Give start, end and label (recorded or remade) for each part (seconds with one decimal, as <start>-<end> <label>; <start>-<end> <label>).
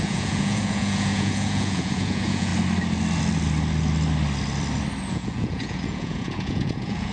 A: 0.0-2.5 remade; 2.5-5.1 recorded; 5.1-7.1 remade